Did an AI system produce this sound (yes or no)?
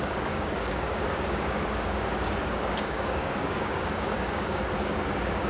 yes